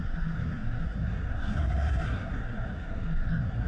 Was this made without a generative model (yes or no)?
no